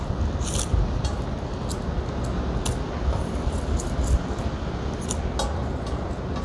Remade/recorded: recorded